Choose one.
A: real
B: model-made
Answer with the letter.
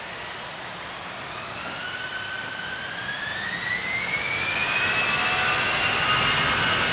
A